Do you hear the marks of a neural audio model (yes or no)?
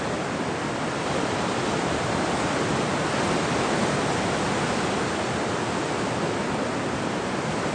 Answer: no